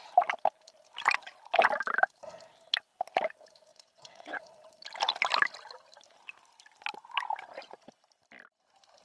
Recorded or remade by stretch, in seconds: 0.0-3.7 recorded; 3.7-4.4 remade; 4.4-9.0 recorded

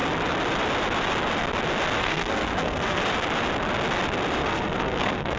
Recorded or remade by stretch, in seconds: 0.0-2.0 recorded; 2.0-3.0 remade; 3.0-4.4 recorded; 4.4-5.4 remade

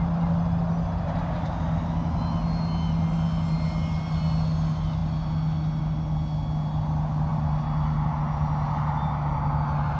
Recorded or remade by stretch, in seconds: 0.0-10.0 recorded

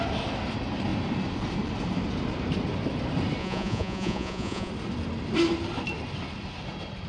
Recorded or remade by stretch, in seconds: 0.0-3.4 recorded; 3.4-4.7 remade; 4.7-7.1 recorded

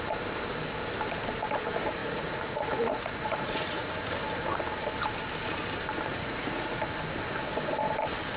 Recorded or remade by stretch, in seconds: 0.0-2.0 recorded; 2.0-3.9 remade; 3.9-6.1 recorded; 6.1-6.8 remade; 6.8-8.4 recorded

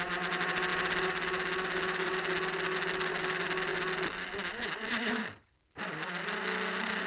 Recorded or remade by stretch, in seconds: 0.0-7.1 recorded

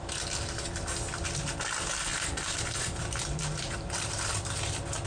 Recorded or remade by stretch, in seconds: 0.0-2.1 recorded; 2.1-4.5 remade; 4.5-5.1 recorded

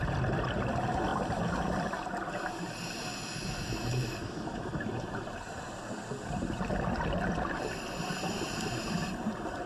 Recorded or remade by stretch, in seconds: 0.0-3.1 recorded; 3.1-4.7 remade; 4.7-9.7 recorded